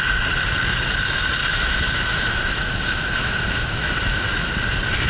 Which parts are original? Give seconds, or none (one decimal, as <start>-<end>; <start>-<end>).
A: 0.0-1.4; 4.5-5.1